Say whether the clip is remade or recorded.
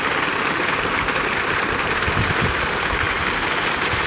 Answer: recorded